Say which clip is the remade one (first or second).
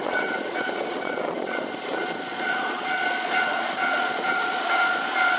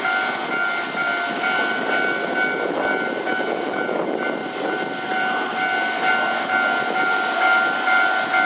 first